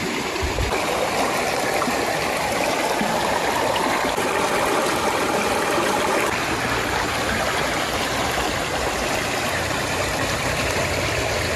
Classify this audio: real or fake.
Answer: real